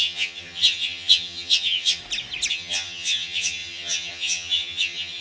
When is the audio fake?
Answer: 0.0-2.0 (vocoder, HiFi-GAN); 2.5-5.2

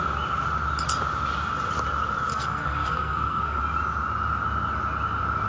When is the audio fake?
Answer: 2.3-3.6 (codec, SNAC)

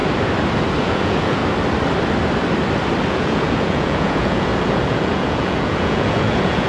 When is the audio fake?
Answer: 0.8-1.4 (vocoder, Vocos); 3.1-6.7

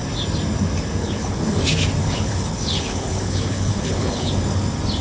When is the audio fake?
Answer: 1.0-1.6 (codec, HILCodec); 2.0-4.3

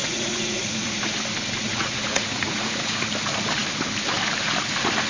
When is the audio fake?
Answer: 0.0-1.0 (vocoder, Vocos); 1.7-3.0

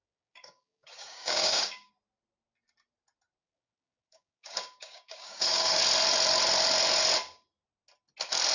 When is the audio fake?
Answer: 0.0-1.9 (codec, DAC); 3.4-5.8